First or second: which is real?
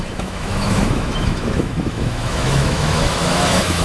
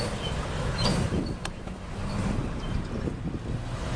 second